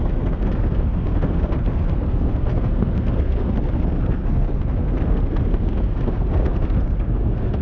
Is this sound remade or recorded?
remade